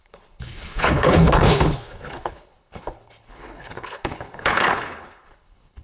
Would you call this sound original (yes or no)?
no